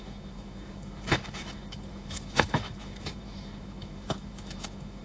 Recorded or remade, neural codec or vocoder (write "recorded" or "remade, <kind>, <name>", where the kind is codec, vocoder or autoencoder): remade, autoencoder, DAC-VAE